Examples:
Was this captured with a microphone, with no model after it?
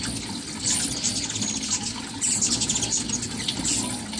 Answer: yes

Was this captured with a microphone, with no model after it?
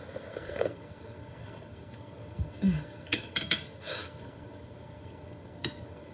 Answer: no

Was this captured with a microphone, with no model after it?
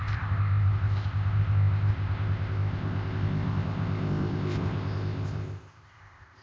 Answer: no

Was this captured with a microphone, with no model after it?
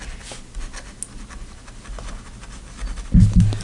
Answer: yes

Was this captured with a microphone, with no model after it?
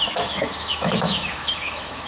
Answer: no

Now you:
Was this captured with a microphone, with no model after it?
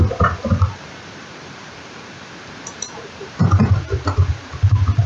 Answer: no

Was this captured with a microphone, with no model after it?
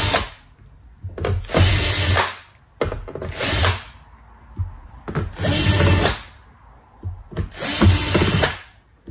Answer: yes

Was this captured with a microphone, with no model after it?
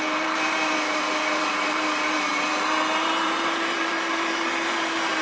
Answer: no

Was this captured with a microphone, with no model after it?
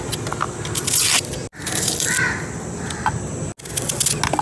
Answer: yes